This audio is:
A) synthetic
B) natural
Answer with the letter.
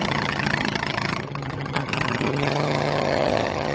A